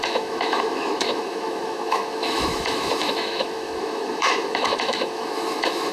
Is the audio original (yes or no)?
no